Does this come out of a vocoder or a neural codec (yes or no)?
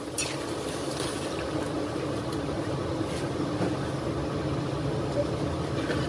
no